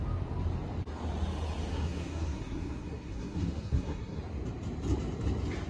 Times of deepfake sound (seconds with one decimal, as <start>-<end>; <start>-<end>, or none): 1.7-4.2

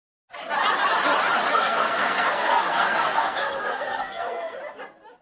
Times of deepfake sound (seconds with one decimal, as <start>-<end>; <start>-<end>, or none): 1.5-4.6

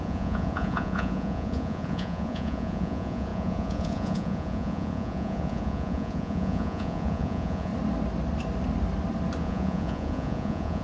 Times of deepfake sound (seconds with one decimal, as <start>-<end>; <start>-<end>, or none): 0.0-7.7; 9.4-10.8